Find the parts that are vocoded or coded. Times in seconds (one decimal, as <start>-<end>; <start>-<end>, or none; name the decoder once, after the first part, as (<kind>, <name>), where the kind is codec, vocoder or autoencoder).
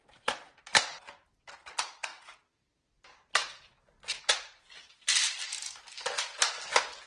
none